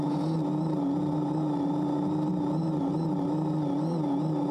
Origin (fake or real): real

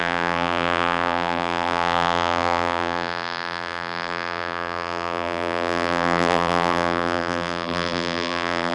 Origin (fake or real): fake